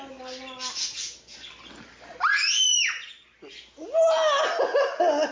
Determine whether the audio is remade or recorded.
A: recorded